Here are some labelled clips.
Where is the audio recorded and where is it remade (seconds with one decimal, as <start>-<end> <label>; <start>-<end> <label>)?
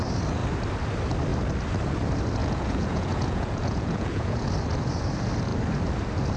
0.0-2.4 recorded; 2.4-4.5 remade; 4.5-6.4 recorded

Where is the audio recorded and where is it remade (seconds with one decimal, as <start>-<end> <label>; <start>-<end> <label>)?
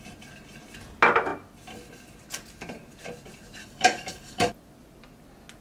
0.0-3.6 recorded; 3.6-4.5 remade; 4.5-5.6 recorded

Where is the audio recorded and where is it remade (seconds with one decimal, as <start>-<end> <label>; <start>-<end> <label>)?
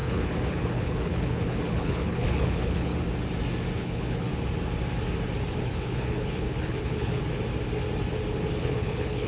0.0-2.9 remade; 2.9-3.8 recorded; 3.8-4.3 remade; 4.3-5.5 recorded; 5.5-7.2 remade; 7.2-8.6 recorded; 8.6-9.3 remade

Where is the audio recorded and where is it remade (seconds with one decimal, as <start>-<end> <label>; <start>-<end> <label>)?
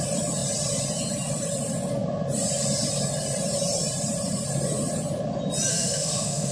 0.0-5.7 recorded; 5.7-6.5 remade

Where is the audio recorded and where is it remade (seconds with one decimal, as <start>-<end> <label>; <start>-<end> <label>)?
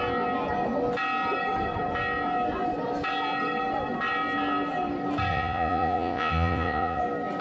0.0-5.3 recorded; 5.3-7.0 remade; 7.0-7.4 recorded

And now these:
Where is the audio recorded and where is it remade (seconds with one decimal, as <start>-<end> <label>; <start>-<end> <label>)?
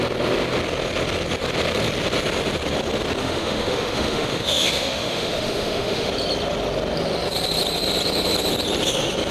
0.0-3.2 recorded; 3.2-6.1 remade; 6.1-9.3 recorded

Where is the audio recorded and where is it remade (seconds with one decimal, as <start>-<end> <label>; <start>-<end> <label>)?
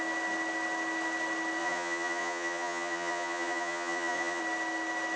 0.0-1.6 recorded; 1.6-4.4 remade; 4.4-5.2 recorded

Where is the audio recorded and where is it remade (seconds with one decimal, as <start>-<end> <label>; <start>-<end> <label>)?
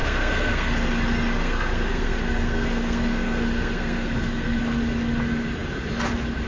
0.0-0.9 remade; 0.9-1.4 recorded; 1.4-4.6 remade; 4.6-6.5 recorded